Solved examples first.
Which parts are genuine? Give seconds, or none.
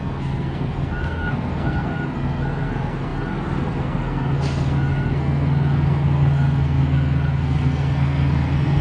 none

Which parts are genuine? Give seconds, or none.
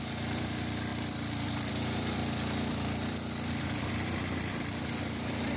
none